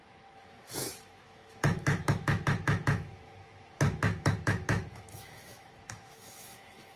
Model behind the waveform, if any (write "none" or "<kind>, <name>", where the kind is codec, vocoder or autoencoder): autoencoder, DAC-VAE